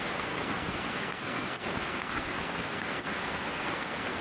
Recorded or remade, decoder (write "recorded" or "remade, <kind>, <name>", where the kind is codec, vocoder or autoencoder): remade, codec, SNAC